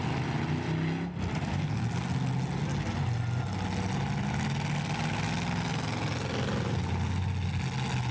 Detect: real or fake real